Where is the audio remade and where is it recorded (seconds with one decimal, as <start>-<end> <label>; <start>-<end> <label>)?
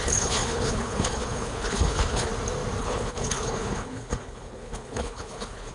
0.0-2.3 remade; 2.3-2.8 recorded; 2.8-5.7 remade